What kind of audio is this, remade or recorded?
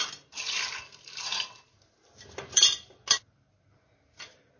recorded